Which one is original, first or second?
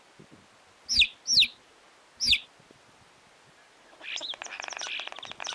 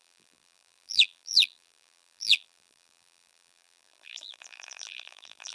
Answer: first